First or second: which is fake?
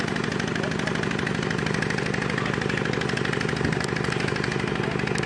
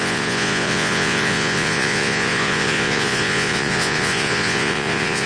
second